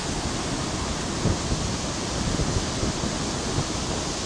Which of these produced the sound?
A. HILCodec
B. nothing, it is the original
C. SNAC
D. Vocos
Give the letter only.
B